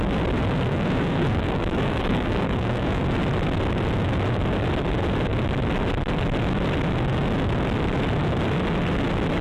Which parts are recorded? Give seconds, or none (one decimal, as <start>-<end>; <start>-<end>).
0.0-0.7; 3.0-9.4

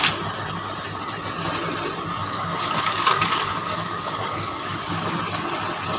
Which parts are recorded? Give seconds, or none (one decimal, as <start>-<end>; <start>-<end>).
0.0-2.2; 5.1-6.0

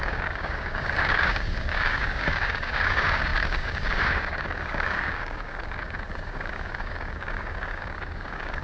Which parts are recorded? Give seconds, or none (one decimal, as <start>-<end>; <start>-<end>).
none

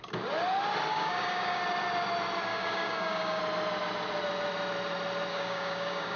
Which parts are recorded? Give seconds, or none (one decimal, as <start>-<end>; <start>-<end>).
0.0-0.9; 1.6-2.5; 3.4-5.3

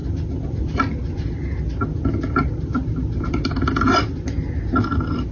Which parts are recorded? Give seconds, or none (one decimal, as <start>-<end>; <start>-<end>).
0.0-5.3

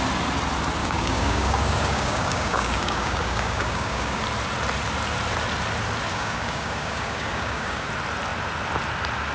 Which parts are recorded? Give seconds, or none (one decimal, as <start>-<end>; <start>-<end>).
0.0-0.8; 4.2-6.1; 7.9-9.3